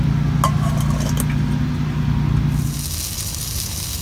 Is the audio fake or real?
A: real